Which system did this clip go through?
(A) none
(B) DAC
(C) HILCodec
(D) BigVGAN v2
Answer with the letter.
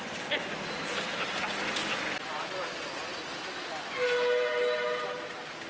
A